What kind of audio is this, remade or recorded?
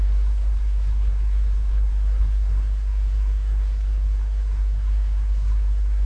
remade